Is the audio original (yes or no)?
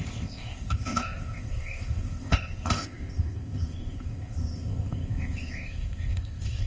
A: no